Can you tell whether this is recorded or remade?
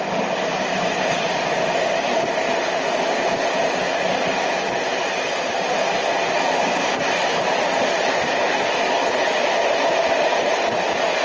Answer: recorded